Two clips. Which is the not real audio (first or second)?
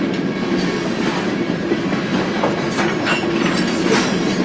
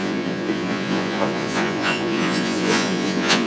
second